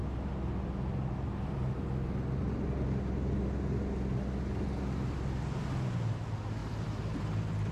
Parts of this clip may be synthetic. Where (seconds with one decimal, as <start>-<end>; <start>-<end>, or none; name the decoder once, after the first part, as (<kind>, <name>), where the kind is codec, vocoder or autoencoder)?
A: 6.6-7.7 (vocoder, BigVGAN v2)